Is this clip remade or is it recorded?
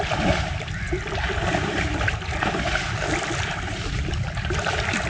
remade